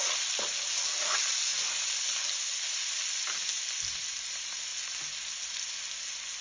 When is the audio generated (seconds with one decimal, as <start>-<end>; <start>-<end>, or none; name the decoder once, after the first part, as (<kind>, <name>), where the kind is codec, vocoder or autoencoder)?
none